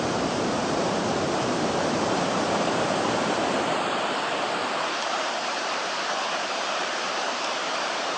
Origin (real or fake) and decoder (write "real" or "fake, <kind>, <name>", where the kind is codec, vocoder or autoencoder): fake, vocoder, BigVGAN v2